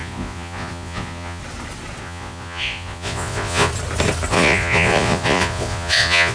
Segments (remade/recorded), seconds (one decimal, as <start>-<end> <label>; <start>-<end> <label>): 0.0-1.4 remade; 1.4-2.0 recorded; 2.0-3.7 remade; 3.7-4.3 recorded; 4.3-6.3 remade